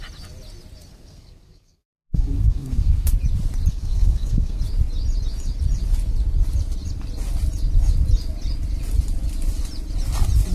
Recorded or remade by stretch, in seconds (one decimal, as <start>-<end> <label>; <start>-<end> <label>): 0.0-0.9 recorded; 0.9-3.1 remade; 3.1-3.7 recorded; 3.7-4.6 remade; 4.6-10.5 recorded